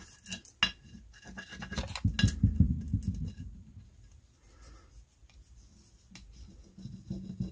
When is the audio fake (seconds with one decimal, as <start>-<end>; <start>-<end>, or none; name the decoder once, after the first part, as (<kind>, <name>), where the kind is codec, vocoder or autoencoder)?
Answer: none